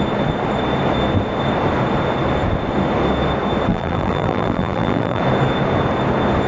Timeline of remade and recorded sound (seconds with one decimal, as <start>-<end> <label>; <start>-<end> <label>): 0.0-3.7 recorded; 3.7-5.2 remade; 5.2-6.5 recorded